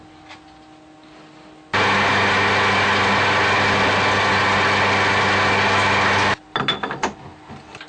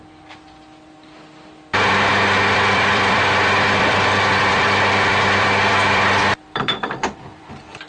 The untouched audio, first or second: first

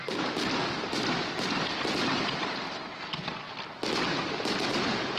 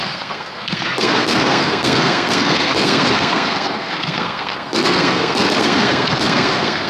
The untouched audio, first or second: first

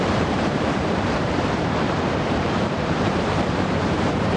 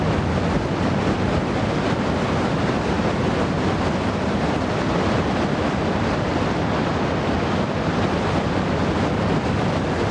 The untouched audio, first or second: second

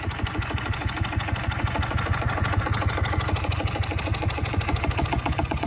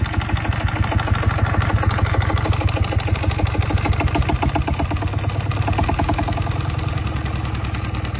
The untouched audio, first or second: second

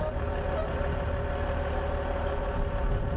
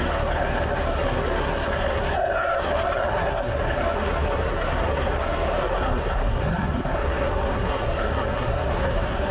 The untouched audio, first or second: first